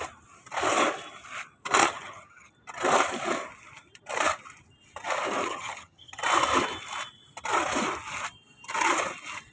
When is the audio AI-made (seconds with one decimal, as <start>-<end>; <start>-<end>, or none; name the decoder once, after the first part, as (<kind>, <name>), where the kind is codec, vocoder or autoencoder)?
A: 1.8-2.5 (vocoder, HiFi-GAN); 5.4-6.2